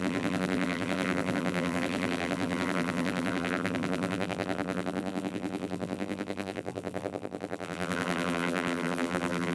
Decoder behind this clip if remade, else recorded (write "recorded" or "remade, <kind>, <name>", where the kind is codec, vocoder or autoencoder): remade, vocoder, BigVGAN v2